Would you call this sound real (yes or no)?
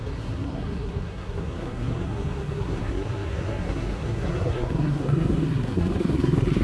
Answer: no